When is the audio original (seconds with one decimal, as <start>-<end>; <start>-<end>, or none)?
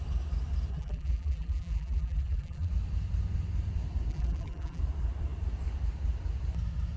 0.0-0.7; 2.7-4.1; 4.8-7.0